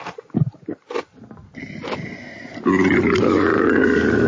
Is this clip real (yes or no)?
yes